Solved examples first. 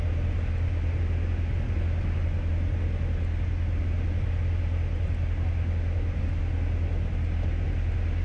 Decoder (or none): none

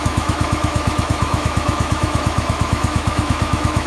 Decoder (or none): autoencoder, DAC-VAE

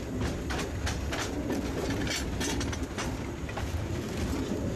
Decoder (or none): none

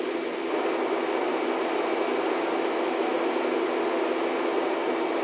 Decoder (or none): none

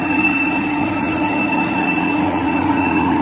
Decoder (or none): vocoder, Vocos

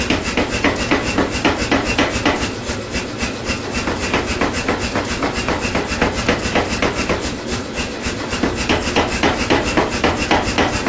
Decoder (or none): none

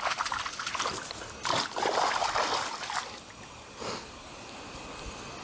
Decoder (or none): none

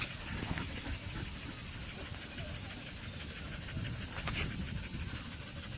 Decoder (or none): none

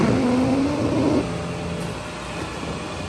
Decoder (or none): none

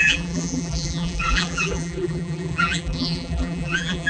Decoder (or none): vocoder, BigVGAN v2